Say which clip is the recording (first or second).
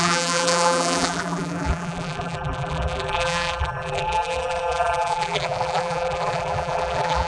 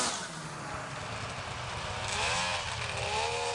second